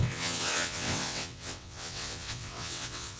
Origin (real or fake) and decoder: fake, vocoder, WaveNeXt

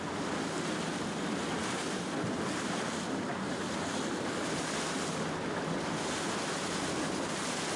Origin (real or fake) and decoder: real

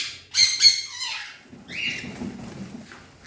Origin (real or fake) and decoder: real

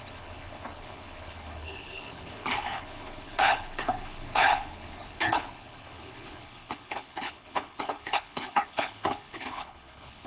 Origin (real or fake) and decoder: fake, codec, HILCodec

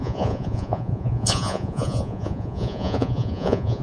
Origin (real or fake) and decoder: fake, vocoder, Vocos